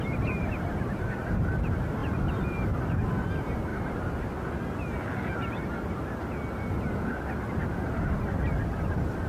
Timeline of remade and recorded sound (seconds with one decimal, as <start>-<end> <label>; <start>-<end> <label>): 0.0-9.3 recorded